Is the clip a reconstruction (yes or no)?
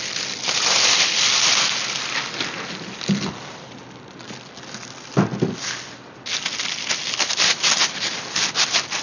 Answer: no